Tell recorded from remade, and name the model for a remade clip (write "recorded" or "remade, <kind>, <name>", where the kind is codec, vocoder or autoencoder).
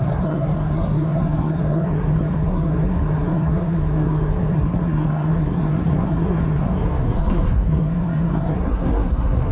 remade, codec, SNAC